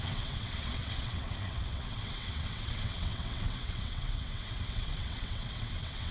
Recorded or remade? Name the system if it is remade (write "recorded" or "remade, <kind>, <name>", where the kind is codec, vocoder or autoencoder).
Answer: remade, vocoder, WaveNeXt